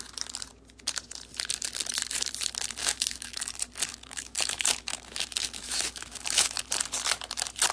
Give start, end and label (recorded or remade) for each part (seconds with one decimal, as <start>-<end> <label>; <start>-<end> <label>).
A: 0.0-2.8 recorded; 2.8-3.4 remade; 3.4-3.9 recorded; 3.9-6.6 remade; 6.6-7.7 recorded